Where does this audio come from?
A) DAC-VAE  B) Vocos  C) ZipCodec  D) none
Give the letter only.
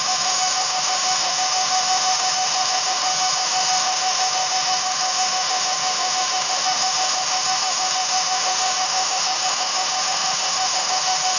A